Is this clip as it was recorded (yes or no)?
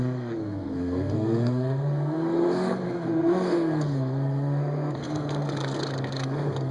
no